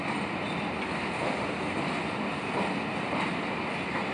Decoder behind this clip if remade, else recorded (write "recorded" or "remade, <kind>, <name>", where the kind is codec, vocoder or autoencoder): recorded